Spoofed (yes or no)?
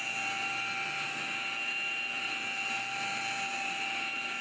no